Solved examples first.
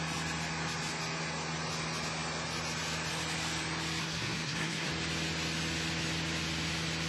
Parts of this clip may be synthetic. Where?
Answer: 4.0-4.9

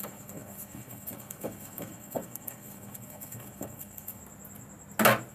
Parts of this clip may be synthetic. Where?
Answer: 0.0-4.2

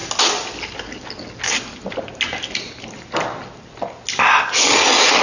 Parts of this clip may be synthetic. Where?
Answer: none